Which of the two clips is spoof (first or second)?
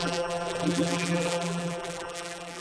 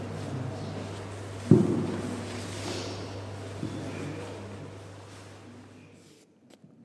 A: first